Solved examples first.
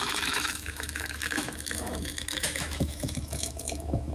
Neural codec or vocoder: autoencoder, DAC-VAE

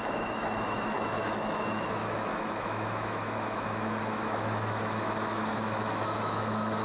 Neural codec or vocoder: autoencoder, DAC-VAE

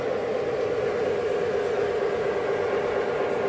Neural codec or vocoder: none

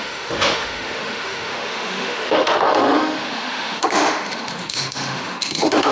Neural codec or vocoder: autoencoder, DAC-VAE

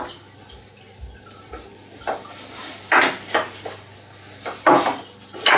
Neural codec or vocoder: none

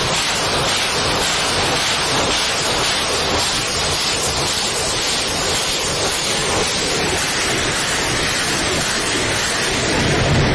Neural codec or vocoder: none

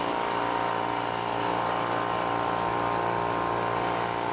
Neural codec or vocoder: none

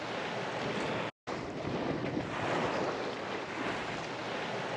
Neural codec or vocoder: none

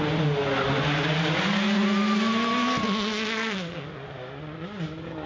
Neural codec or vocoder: none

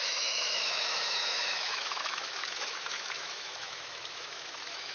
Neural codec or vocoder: autoencoder, DAC-VAE